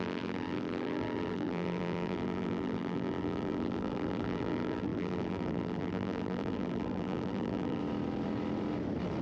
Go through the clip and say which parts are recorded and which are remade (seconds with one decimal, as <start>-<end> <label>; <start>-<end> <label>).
0.0-7.8 remade; 7.8-9.2 recorded

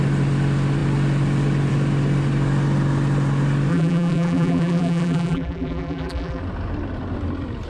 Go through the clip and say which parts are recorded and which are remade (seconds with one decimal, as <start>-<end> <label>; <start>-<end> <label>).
0.0-3.7 recorded; 3.7-6.4 remade; 6.4-7.7 recorded

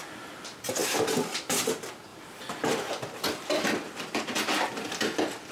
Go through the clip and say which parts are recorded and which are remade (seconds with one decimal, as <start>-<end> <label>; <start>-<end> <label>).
0.0-2.1 recorded; 2.1-5.5 remade

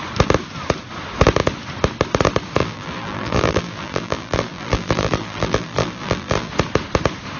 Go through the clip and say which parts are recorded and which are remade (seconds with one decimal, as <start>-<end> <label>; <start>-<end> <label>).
0.0-2.6 recorded; 2.6-6.5 remade; 6.5-7.4 recorded

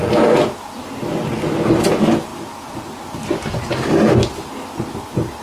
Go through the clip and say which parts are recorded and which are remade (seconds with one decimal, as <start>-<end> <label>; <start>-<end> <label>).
0.0-5.4 recorded

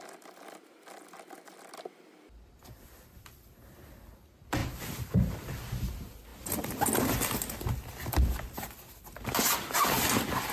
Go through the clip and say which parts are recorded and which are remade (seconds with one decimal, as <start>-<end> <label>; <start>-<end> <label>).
0.0-4.6 recorded; 4.6-5.7 remade; 5.7-10.5 recorded

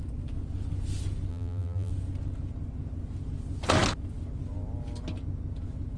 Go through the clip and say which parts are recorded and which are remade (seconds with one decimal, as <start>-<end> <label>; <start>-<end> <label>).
0.0-1.3 recorded; 1.3-1.9 remade; 1.9-6.0 recorded